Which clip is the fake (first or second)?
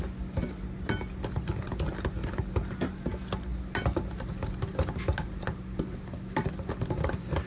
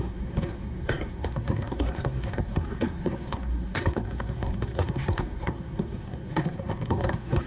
second